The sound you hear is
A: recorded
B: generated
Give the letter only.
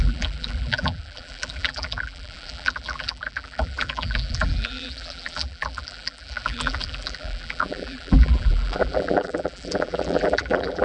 B